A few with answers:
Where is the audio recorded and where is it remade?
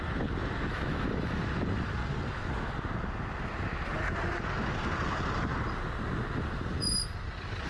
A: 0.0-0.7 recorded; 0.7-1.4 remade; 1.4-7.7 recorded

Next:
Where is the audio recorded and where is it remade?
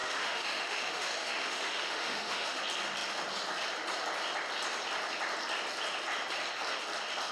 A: 0.0-2.6 remade; 2.6-7.3 recorded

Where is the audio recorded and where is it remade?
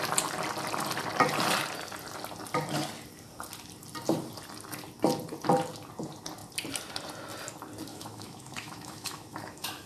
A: 0.0-7.9 recorded; 7.9-9.9 remade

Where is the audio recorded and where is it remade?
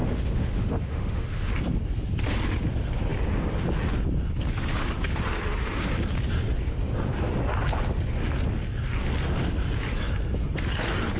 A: 0.0-1.5 remade; 1.5-11.2 recorded